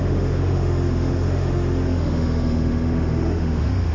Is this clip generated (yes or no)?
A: yes